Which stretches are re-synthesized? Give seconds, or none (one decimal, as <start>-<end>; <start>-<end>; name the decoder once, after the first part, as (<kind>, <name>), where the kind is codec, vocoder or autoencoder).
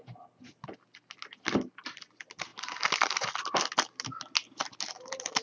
none